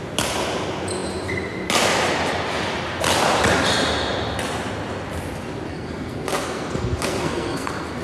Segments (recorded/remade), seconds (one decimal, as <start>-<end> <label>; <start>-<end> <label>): 0.0-5.7 recorded; 5.7-8.0 remade